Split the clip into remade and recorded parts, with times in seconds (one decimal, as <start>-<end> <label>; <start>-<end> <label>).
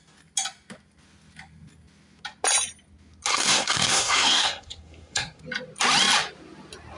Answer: 0.0-3.3 recorded; 3.3-5.4 remade; 5.4-7.0 recorded